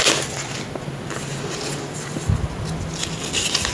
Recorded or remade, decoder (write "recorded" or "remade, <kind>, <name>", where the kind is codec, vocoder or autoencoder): recorded